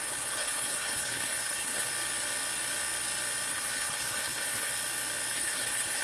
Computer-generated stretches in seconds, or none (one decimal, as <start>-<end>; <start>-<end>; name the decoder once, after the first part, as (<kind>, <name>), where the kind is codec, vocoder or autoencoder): 0.0-1.9 (codec, HILCodec); 3.5-4.7; 5.3-6.0